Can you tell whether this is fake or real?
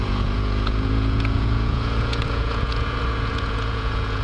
fake